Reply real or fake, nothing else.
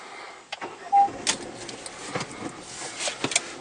real